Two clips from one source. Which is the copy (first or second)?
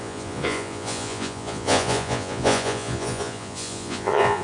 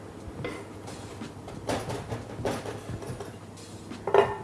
first